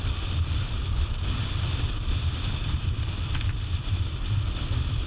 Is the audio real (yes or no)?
no